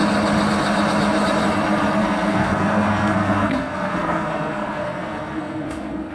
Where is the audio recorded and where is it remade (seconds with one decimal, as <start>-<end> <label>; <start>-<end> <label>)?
0.0-2.0 recorded; 2.0-6.1 remade